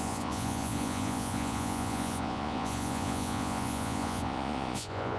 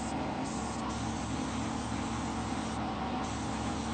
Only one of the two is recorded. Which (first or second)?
second